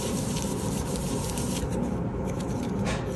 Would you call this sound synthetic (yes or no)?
yes